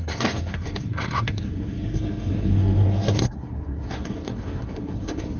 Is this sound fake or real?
fake